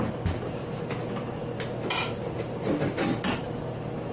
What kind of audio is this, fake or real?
real